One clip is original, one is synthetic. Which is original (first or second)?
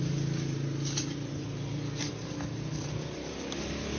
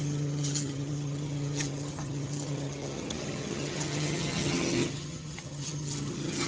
first